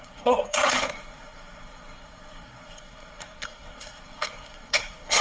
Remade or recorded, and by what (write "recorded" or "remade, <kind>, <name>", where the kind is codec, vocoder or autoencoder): remade, codec, SNAC